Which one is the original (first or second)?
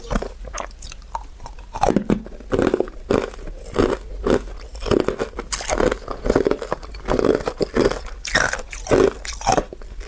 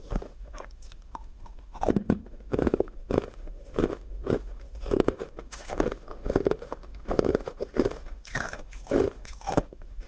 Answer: first